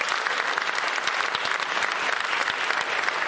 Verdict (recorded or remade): recorded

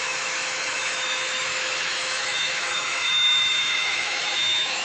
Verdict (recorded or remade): remade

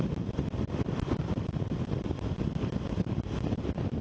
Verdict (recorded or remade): recorded